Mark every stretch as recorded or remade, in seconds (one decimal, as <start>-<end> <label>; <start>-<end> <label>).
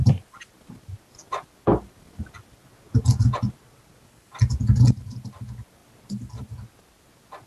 0.0-7.5 recorded